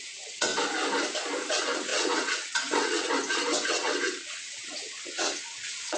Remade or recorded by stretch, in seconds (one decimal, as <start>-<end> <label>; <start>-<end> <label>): 0.0-0.5 remade; 0.5-1.5 recorded; 1.5-6.0 remade